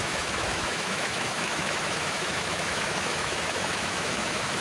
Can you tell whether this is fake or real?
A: fake